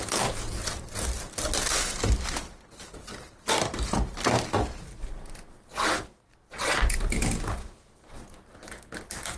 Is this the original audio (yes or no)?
yes